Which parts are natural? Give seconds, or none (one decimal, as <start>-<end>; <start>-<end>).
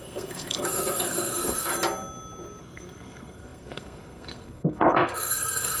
1.7-2.6